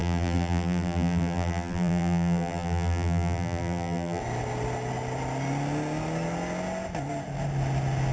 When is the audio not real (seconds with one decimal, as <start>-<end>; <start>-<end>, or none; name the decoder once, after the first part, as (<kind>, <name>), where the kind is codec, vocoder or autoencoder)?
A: 0.0-4.2 (vocoder, BigVGAN v2)